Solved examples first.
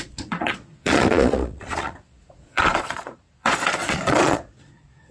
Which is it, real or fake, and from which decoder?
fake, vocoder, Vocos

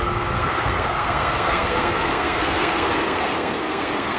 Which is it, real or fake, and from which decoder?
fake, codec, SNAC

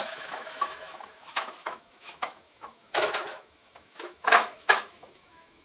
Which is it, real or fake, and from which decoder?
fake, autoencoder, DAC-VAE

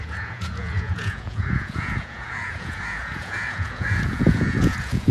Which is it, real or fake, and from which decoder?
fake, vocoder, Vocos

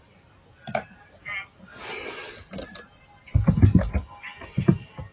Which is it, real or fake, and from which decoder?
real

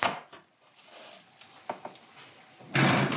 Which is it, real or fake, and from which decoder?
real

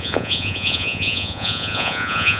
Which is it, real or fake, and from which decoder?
fake, vocoder, Vocos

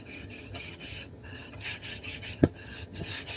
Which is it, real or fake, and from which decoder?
fake, vocoder, HiFi-GAN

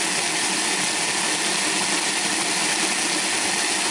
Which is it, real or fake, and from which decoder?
real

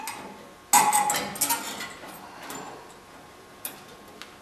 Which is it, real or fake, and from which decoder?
real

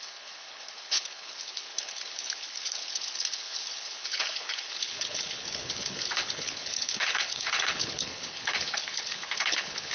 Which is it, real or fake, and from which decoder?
fake, codec, HILCodec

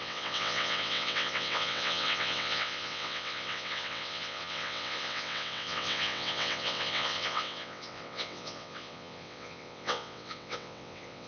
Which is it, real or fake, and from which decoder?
fake, vocoder, WaveNeXt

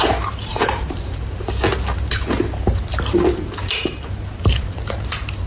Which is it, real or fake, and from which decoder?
fake, vocoder, BigVGAN v2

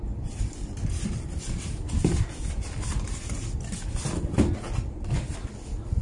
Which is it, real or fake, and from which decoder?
real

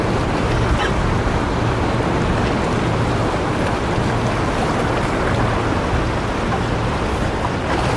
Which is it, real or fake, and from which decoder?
real